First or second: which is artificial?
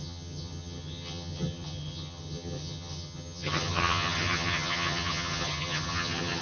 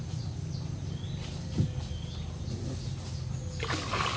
first